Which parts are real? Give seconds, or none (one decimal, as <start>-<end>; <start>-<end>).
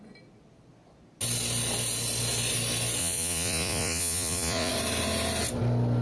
0.0-3.0; 4.7-6.0